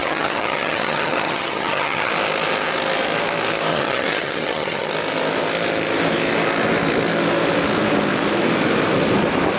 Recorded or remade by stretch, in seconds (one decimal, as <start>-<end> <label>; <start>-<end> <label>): 0.0-2.1 remade; 2.1-3.7 recorded; 3.7-4.9 remade; 4.9-9.6 recorded